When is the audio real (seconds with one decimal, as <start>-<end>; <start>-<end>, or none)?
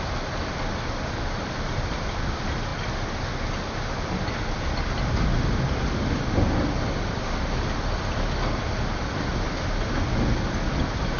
0.0-11.2